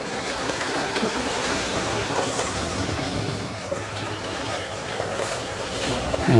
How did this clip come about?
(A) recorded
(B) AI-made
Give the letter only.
B